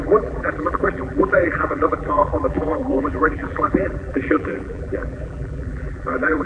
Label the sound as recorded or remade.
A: remade